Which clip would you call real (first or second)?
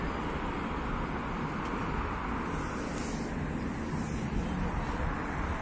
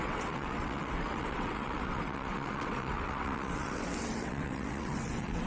first